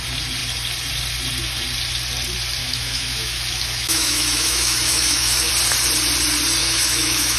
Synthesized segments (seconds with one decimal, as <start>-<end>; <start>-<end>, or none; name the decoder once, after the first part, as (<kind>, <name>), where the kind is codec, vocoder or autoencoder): 2.6-5.5 (autoencoder, DAC-VAE); 6.6-7.4